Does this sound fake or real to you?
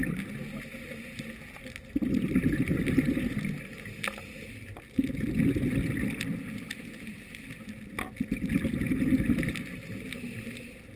real